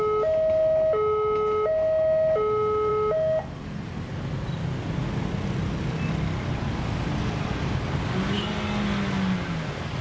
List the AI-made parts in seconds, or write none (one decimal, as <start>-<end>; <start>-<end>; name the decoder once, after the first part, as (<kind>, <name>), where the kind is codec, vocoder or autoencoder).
none

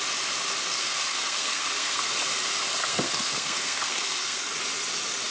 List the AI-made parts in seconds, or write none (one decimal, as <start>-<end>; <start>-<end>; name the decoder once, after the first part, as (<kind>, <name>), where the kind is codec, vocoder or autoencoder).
0.7-2.0 (codec, SNAC); 2.8-4.5

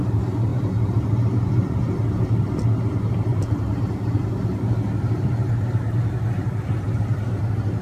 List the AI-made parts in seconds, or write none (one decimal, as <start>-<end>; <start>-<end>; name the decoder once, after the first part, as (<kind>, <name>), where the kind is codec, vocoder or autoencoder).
none